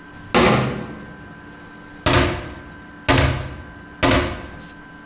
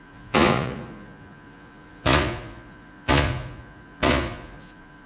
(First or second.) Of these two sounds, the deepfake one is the second